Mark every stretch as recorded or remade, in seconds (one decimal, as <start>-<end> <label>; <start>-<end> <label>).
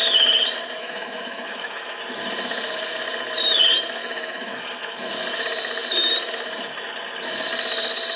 0.0-0.8 recorded; 0.8-2.0 remade; 2.0-4.0 recorded; 4.0-5.1 remade; 5.1-8.2 recorded